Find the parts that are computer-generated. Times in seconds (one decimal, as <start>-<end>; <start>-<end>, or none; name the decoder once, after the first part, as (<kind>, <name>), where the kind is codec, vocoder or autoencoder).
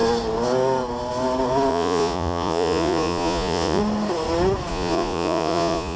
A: 1.7-3.8 (vocoder, Vocos); 4.7-6.0